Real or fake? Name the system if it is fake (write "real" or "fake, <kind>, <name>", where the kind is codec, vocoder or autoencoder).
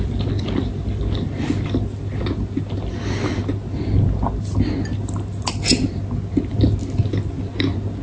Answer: real